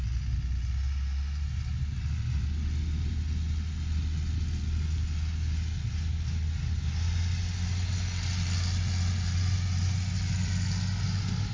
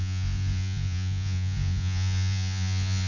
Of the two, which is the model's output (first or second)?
second